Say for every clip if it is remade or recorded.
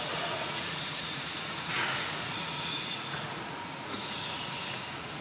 remade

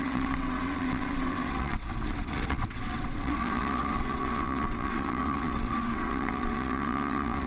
remade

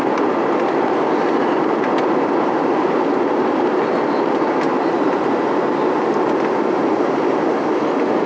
recorded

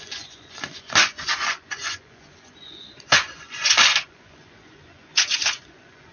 remade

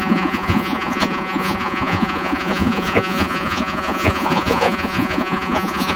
remade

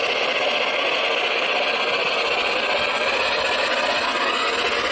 recorded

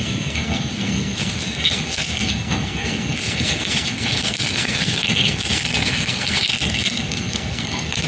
remade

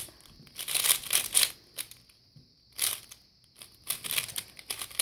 recorded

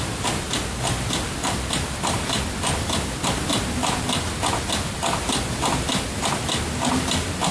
recorded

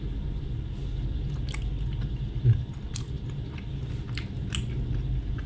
recorded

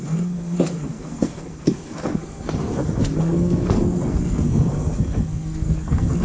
remade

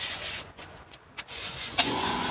remade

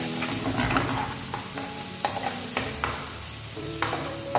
remade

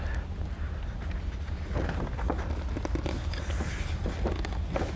recorded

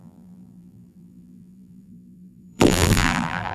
remade